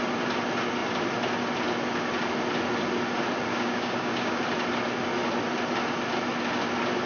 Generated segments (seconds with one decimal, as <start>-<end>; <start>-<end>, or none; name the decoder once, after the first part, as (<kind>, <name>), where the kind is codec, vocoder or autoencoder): 3.5-4.4 (codec, DAC)